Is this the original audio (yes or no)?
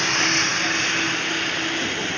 yes